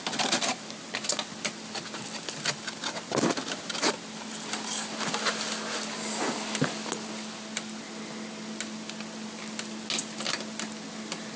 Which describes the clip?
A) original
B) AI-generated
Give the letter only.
A